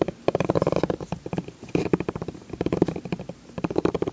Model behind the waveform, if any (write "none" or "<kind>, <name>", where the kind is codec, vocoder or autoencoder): vocoder, BigVGAN v2